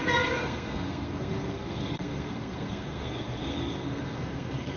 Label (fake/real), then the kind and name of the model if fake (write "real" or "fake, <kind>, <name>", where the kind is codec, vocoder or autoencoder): fake, codec, SNAC